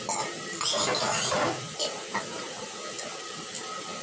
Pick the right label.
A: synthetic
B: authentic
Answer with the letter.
B